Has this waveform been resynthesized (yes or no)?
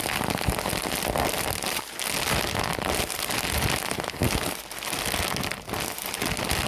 no